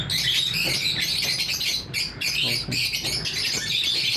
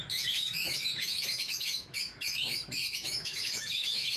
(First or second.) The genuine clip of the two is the first